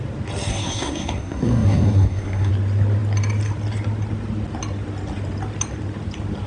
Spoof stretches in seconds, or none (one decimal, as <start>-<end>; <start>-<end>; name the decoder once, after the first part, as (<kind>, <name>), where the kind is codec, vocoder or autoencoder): 0.5-2.5 (codec, SNAC)